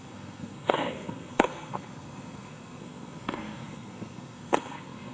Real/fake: fake